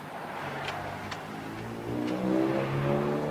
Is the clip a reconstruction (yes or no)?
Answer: no